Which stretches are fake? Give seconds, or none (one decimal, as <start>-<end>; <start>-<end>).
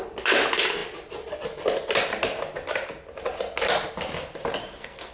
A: 4.6-5.1